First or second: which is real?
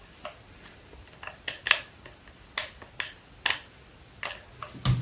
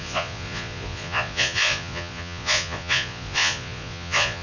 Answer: first